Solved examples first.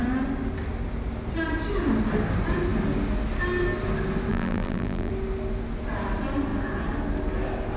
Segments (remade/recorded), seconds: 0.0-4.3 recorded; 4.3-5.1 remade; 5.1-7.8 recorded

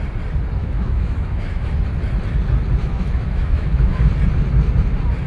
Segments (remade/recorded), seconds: 0.0-0.6 recorded; 0.6-1.7 remade; 1.7-2.8 recorded; 2.8-4.1 remade; 4.1-5.3 recorded

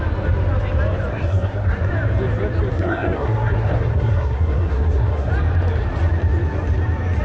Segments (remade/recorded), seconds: 0.0-1.1 recorded; 1.1-1.9 remade; 1.9-2.7 recorded; 2.7-5.3 remade; 5.3-7.2 recorded

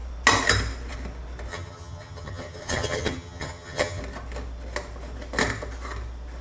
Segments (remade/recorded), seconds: 0.0-1.5 recorded; 1.5-4.0 remade; 4.0-6.4 recorded

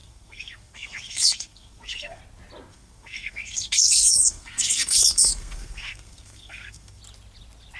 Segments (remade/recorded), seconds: 0.0-2.2 remade; 2.2-2.7 recorded; 2.7-7.0 remade; 7.0-7.8 recorded

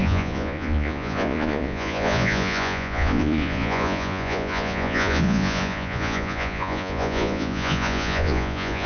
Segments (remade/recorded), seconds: 0.0-8.9 remade

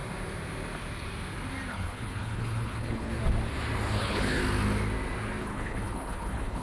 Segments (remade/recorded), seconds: 0.0-1.7 recorded; 1.7-3.1 remade; 3.1-4.0 recorded; 4.0-4.4 remade; 4.4-5.4 recorded; 5.4-6.6 remade